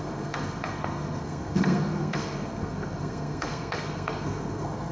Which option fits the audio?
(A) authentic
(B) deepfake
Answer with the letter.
B